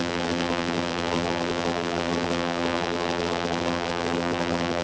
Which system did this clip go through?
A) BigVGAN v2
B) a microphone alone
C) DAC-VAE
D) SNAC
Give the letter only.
A